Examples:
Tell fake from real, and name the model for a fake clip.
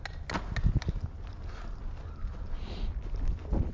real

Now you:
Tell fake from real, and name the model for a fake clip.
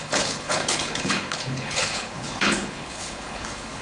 fake, codec, HILCodec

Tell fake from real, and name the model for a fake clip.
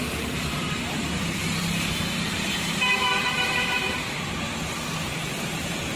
fake, vocoder, BigVGAN v2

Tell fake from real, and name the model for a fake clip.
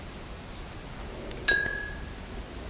real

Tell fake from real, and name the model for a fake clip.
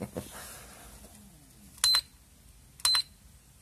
real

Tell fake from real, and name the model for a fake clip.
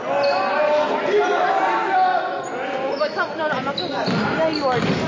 real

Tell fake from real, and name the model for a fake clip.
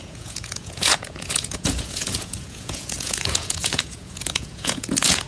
fake, vocoder, Vocos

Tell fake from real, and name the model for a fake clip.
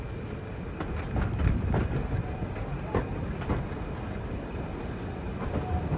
real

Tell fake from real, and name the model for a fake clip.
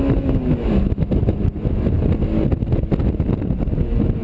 real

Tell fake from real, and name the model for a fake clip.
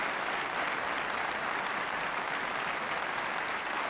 real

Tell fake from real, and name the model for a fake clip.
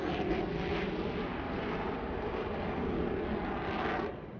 real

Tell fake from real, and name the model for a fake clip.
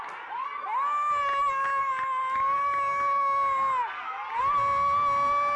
real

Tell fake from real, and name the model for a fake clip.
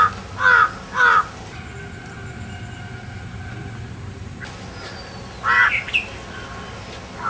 real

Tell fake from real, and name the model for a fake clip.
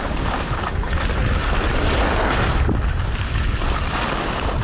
real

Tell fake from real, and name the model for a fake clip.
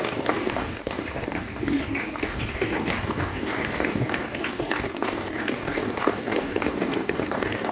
fake, codec, DAC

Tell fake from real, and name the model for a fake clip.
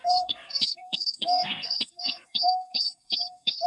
fake, codec, SNAC